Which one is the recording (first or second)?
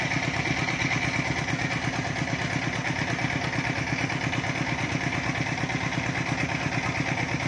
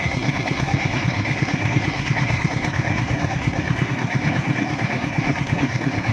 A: first